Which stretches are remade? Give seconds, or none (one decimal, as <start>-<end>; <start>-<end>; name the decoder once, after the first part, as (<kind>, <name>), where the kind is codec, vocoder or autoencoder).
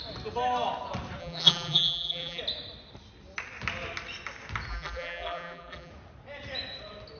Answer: 1.2-2.4 (vocoder, BigVGAN v2); 4.7-5.9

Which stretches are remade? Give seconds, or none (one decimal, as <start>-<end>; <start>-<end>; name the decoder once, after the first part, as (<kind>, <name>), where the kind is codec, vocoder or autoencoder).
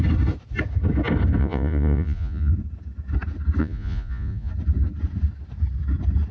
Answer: 1.4-2.5 (vocoder, Vocos); 3.6-4.5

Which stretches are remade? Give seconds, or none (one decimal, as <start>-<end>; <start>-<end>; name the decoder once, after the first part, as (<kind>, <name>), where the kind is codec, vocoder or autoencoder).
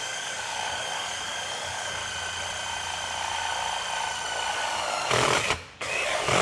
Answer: 0.0-2.0 (codec, DAC); 4.5-6.4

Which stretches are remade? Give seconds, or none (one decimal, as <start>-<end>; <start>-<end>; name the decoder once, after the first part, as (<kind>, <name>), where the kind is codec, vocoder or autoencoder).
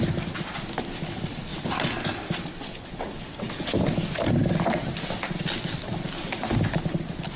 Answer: none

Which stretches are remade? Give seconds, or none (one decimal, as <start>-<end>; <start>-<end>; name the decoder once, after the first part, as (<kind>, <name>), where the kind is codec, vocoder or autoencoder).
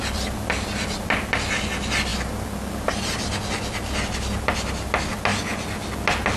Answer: none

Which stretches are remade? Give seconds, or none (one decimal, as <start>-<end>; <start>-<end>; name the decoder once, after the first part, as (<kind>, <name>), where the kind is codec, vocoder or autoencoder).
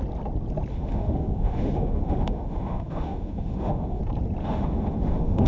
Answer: 0.7-4.0 (autoencoder, DAC-VAE); 4.4-5.5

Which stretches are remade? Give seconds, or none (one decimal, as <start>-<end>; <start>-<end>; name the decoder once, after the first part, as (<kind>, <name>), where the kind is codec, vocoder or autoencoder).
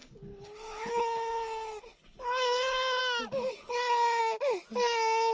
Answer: 0.0-3.0 (codec, HILCodec); 3.5-4.2